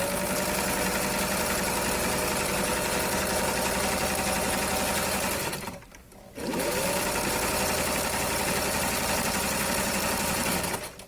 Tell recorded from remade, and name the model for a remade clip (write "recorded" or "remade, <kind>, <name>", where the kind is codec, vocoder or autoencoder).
recorded